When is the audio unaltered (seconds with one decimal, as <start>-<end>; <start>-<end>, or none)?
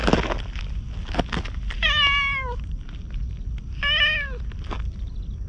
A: 0.0-5.5